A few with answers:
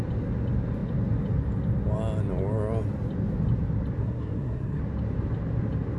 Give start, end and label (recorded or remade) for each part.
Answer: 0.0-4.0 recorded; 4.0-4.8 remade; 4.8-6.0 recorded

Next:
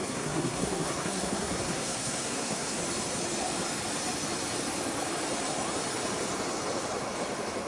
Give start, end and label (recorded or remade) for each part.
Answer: 0.0-2.8 remade; 2.8-7.7 recorded

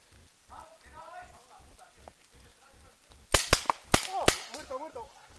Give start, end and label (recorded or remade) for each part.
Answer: 0.0-5.4 recorded

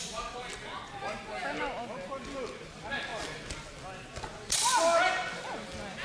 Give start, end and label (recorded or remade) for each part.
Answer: 0.0-6.0 recorded

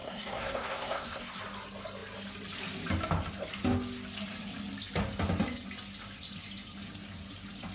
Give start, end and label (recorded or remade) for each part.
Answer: 0.0-1.4 remade; 1.4-7.7 recorded

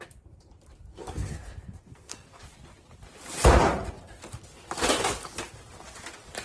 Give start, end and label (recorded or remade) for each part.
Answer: 0.0-0.9 recorded; 0.9-2.4 remade; 2.4-6.4 recorded

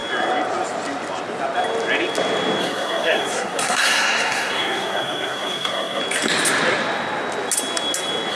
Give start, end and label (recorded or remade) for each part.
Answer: 0.0-2.6 recorded; 2.6-6.0 remade; 6.0-8.3 recorded

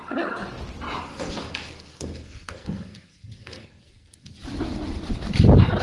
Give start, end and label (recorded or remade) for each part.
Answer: 0.0-1.1 recorded; 1.1-4.3 remade; 4.3-5.8 recorded